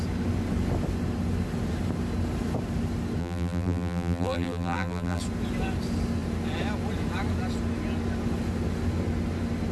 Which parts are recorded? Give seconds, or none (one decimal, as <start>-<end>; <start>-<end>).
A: 0.0-3.2; 5.2-9.7